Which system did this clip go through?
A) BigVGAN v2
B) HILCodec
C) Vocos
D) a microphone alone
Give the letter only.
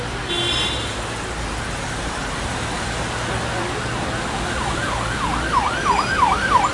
D